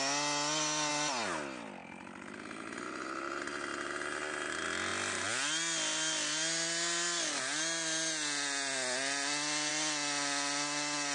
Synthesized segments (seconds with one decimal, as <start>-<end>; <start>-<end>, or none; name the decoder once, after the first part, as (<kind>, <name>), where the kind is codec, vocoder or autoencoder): none